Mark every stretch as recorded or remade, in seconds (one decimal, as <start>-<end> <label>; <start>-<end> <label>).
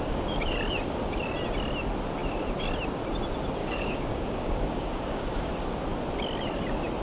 0.0-3.6 recorded; 3.6-5.5 remade; 5.5-7.0 recorded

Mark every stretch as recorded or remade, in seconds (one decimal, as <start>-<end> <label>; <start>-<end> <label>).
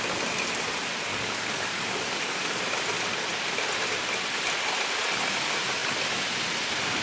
0.0-1.1 recorded; 1.1-2.6 remade; 2.6-7.0 recorded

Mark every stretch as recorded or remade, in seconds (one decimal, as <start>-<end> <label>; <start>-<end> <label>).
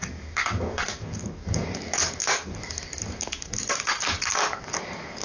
0.0-5.2 remade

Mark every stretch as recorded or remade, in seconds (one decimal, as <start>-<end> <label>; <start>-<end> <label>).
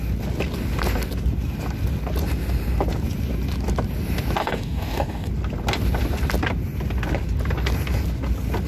0.0-4.4 recorded; 4.4-5.3 remade; 5.3-8.7 recorded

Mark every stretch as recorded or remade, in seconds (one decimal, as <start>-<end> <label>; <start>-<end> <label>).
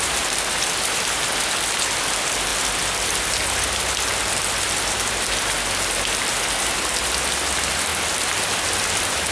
0.0-9.3 recorded